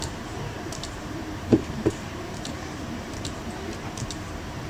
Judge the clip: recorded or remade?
remade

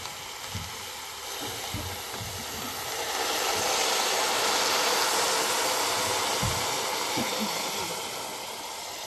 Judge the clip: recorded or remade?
recorded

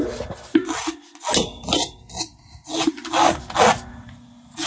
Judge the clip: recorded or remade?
recorded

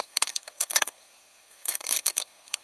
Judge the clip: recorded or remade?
remade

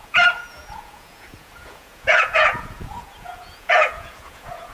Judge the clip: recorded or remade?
remade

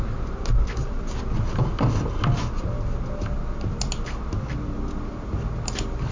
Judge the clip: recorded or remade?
recorded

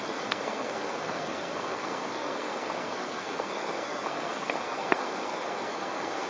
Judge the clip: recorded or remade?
remade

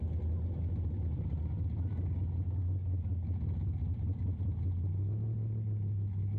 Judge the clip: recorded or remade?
recorded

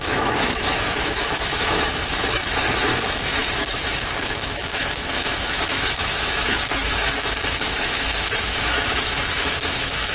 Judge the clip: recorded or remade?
remade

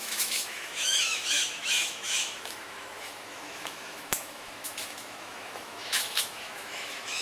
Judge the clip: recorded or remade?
remade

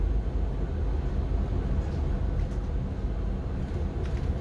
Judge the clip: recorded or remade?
recorded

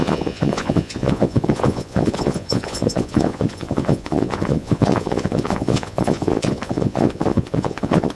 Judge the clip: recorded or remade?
remade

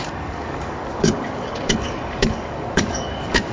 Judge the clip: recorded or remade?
remade